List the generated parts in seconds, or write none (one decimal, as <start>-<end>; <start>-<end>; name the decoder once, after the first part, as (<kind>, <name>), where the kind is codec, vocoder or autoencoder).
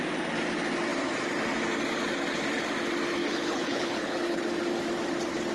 3.2-4.4 (codec, HILCodec)